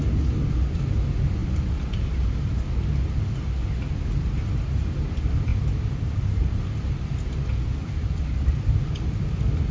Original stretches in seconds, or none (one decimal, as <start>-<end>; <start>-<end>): 0.0-5.5; 6.5-7.8; 8.5-9.7